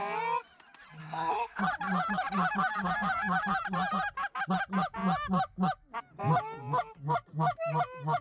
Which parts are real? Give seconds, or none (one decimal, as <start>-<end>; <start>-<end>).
0.0-1.0; 1.6-8.2